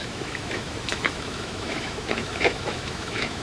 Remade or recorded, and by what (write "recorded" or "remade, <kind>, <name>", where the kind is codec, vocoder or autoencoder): remade, autoencoder, DAC-VAE